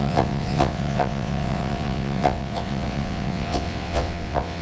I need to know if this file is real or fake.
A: fake